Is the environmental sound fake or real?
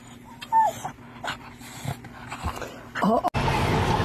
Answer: real